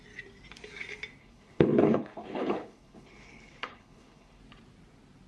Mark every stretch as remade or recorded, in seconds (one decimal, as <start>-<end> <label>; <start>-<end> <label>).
0.0-1.2 recorded; 1.2-4.4 remade; 4.4-5.3 recorded

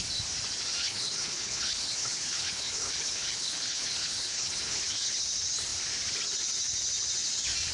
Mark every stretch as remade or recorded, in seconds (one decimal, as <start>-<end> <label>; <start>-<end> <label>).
0.0-0.8 recorded; 0.8-5.2 remade; 5.2-7.7 recorded

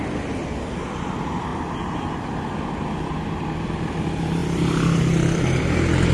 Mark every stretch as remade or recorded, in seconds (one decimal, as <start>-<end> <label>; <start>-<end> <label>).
0.0-6.1 recorded

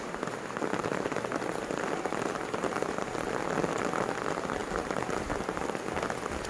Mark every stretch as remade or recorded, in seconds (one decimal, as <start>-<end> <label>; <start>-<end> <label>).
0.0-6.5 recorded

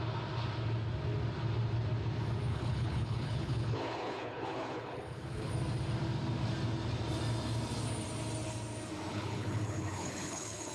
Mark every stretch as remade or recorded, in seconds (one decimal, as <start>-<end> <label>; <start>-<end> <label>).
0.0-2.5 recorded; 2.5-5.5 remade; 5.5-9.1 recorded; 9.1-10.7 remade